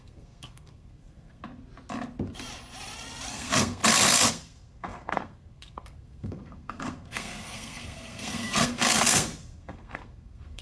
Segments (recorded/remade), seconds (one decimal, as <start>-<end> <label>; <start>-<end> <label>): 0.0-1.4 remade; 1.4-3.3 recorded; 3.3-3.8 remade; 3.8-4.3 recorded; 4.3-10.6 remade